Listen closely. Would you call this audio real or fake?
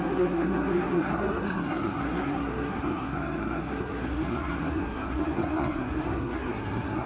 fake